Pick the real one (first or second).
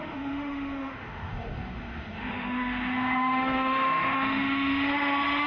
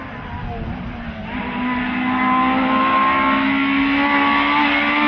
second